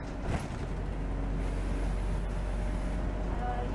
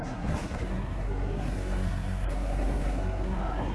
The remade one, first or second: second